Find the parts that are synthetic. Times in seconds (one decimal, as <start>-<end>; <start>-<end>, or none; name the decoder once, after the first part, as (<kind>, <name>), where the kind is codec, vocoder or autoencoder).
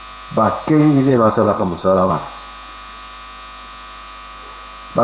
1.1-2.1 (codec, ZipCodec)